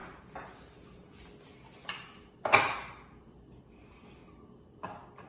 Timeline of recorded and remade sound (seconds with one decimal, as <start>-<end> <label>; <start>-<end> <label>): 0.0-5.3 recorded